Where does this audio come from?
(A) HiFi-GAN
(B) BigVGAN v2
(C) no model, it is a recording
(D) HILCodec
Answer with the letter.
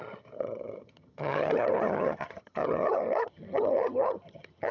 A